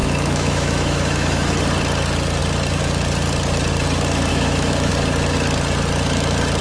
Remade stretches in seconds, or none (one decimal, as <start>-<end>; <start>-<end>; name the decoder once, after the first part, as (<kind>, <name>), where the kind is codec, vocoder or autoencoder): 0.0-1.6 (autoencoder, DAC-VAE); 4.3-4.9